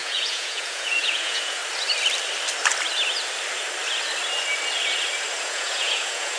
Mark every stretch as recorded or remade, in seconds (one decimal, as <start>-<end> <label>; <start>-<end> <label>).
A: 0.0-1.6 remade; 1.6-5.4 recorded; 5.4-6.4 remade